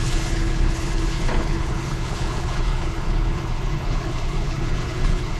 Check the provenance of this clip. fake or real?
fake